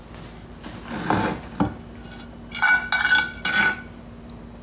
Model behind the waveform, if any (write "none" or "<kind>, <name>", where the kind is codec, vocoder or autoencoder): none